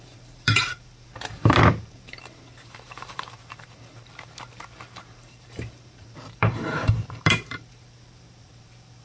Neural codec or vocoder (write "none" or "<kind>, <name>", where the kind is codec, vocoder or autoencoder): vocoder, BigVGAN v2